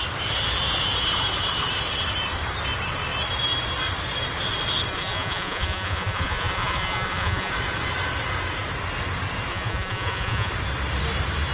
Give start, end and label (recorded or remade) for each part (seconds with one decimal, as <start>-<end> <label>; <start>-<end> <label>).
0.0-4.9 recorded; 4.9-7.5 remade; 7.5-9.5 recorded; 9.5-10.5 remade; 10.5-11.5 recorded